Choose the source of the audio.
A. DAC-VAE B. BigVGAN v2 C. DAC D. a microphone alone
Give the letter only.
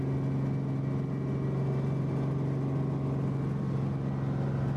D